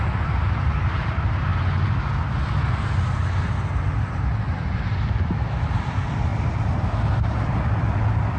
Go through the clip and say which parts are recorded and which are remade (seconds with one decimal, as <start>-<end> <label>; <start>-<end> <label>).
0.0-1.5 remade; 1.5-5.5 recorded; 5.5-6.3 remade; 6.3-7.0 recorded; 7.0-8.4 remade